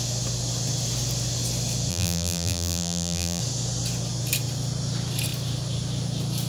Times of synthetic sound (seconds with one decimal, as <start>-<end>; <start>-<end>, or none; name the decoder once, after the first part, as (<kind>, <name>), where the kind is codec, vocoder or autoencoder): 1.9-3.4 (vocoder, BigVGAN v2)